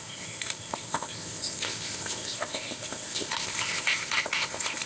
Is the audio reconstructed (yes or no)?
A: yes